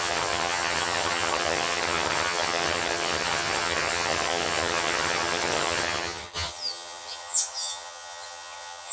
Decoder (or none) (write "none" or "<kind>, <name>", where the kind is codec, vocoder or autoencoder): vocoder, HiFi-GAN